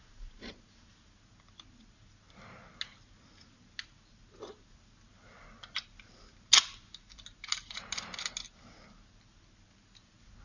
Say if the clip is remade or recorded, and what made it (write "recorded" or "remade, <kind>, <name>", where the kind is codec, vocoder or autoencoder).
recorded